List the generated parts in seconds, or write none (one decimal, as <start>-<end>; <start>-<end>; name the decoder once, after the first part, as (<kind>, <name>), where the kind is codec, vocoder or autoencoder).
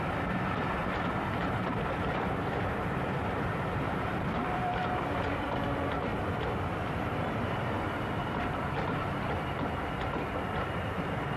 0.0-0.8 (vocoder, BigVGAN v2); 1.3-11.4